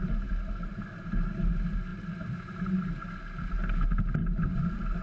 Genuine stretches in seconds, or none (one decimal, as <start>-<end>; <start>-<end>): 0.0-0.7; 1.5-5.0